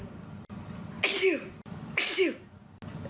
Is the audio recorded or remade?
recorded